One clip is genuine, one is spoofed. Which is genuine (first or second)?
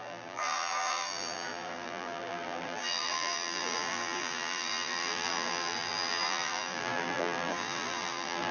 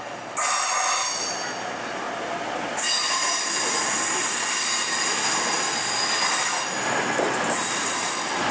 second